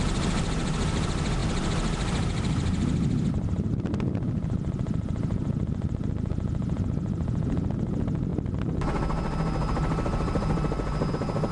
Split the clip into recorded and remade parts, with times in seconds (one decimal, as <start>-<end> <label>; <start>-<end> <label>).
0.0-11.5 recorded

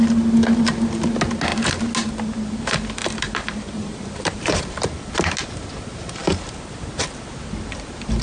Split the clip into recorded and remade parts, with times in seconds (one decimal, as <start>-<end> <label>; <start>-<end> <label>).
0.0-3.0 recorded; 3.0-4.6 remade; 4.6-6.2 recorded; 6.2-6.9 remade; 6.9-8.2 recorded